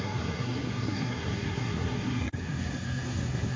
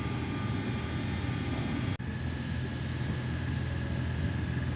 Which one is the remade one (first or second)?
first